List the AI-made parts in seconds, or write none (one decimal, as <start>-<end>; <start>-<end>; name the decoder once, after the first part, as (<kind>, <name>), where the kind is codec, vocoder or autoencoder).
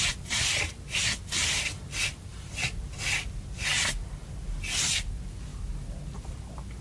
none